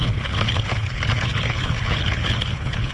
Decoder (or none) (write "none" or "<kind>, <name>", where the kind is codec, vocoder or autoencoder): codec, HILCodec